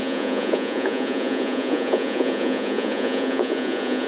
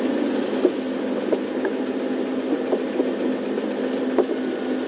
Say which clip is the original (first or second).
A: second